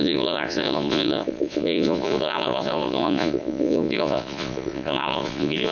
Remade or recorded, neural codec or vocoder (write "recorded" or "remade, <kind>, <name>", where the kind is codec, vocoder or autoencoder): remade, vocoder, Vocos